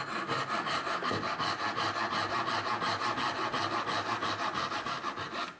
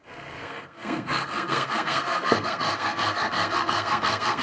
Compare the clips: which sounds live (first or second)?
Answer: first